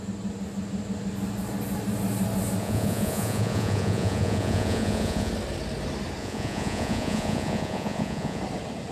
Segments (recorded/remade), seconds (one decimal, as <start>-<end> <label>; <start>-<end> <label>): 0.0-2.6 recorded; 2.6-5.3 remade; 5.3-6.2 recorded; 6.2-8.4 remade; 8.4-8.9 recorded